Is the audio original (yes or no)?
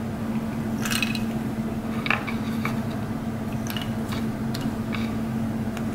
yes